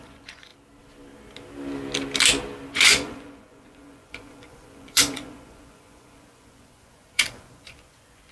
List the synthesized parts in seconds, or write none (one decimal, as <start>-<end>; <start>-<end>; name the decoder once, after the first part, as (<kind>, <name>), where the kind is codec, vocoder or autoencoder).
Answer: 0.0-0.5 (vocoder, Vocos); 2.7-8.3